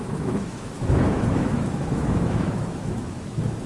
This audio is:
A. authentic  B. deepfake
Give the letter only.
B